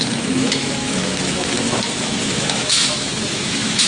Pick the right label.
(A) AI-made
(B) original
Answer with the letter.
A